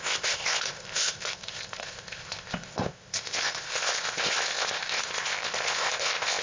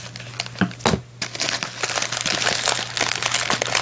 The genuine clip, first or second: second